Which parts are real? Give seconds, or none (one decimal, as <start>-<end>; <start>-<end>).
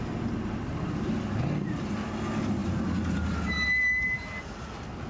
0.0-5.1